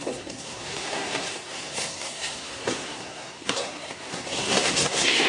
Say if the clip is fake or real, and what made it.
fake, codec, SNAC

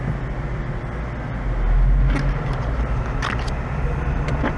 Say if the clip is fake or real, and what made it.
real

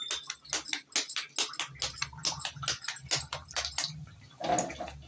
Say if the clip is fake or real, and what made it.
real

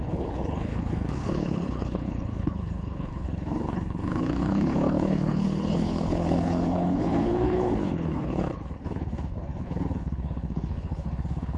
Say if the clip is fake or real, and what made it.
fake, codec, HILCodec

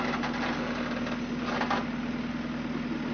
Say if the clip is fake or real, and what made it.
real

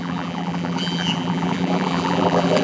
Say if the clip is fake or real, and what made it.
fake, vocoder, BigVGAN v2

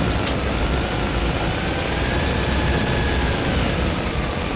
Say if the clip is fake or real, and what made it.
real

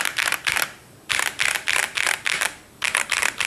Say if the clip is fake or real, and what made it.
real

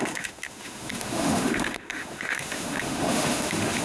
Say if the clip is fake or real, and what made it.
fake, autoencoder, DAC-VAE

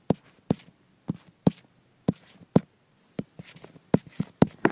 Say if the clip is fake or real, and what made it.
real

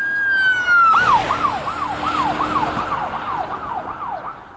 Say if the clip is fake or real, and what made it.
real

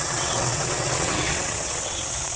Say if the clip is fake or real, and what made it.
fake, vocoder, WaveNeXt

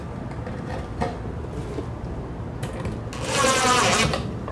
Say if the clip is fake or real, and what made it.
real